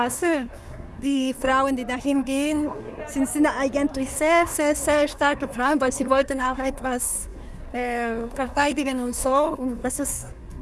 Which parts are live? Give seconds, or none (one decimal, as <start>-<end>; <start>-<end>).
1.5-2.0; 3.0-3.9